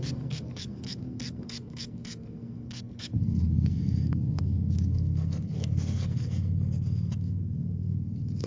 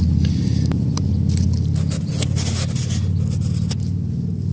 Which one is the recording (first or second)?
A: second